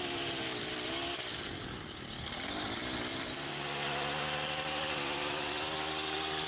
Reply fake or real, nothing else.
real